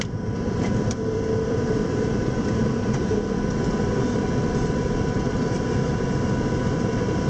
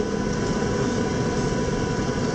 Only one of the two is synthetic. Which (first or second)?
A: first